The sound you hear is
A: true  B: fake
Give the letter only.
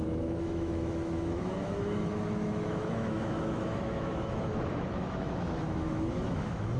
B